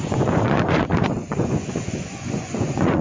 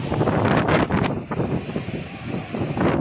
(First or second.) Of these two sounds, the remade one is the first